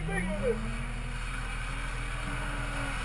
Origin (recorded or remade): recorded